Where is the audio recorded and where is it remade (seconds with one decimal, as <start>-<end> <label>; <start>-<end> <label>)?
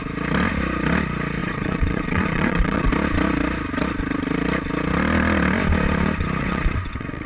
0.0-1.4 recorded; 1.4-2.9 remade; 2.9-6.4 recorded; 6.4-7.3 remade